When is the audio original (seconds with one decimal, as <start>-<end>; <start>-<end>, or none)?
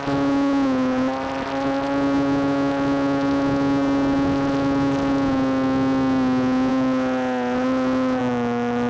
0.0-8.9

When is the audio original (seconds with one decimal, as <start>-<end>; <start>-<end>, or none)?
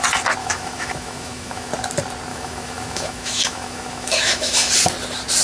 0.0-0.4; 1.7-2.3; 4.7-5.4